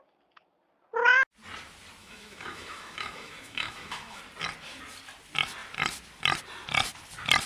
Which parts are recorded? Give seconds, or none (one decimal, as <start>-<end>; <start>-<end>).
0.0-2.0; 4.2-7.5